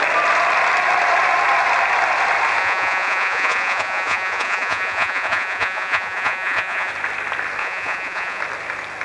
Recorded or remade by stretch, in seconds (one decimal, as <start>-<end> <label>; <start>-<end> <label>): 0.0-2.6 recorded; 2.6-6.9 remade; 6.9-7.6 recorded; 7.6-8.4 remade; 8.4-9.0 recorded